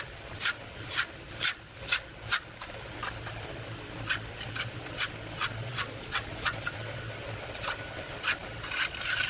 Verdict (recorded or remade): recorded